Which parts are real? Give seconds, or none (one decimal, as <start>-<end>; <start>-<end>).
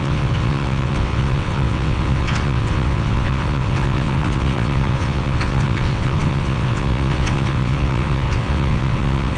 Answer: none